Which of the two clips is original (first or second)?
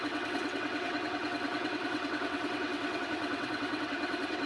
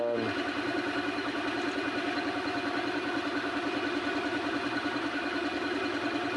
second